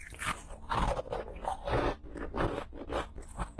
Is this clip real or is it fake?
real